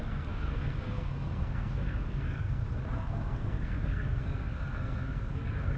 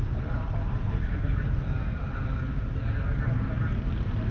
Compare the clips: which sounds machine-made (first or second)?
first